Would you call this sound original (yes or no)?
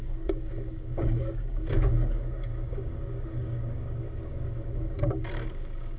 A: no